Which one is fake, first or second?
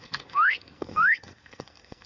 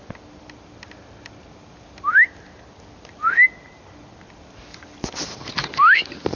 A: first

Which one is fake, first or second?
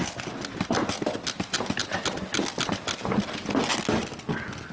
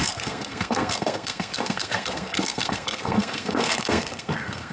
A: second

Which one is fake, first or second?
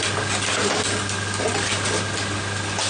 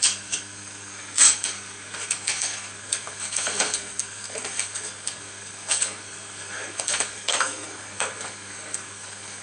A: second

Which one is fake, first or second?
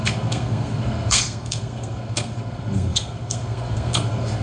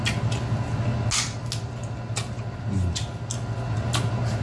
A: first